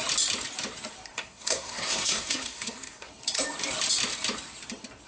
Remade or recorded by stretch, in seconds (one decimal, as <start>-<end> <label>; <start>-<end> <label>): 0.0-1.1 recorded; 1.1-3.1 remade; 3.1-5.1 recorded